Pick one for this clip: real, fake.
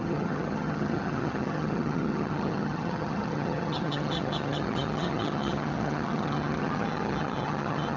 fake